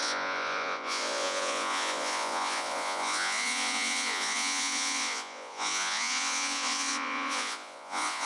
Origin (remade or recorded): remade